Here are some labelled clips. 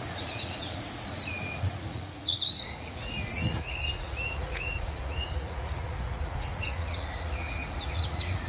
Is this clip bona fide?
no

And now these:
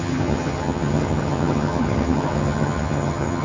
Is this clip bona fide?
no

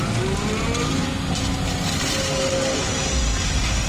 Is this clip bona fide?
yes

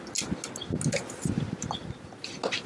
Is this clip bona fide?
yes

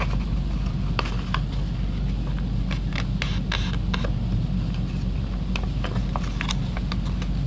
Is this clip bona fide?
yes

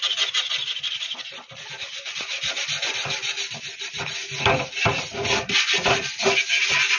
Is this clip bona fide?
yes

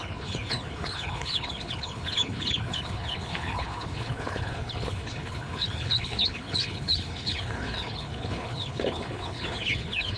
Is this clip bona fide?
no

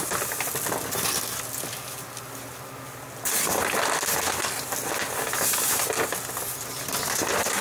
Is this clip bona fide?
yes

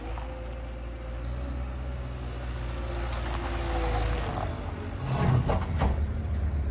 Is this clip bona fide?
yes